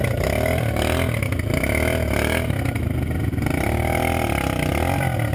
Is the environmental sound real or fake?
real